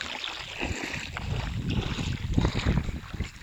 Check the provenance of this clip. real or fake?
real